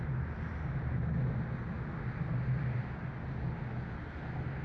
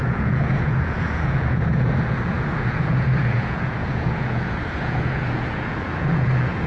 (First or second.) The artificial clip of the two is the second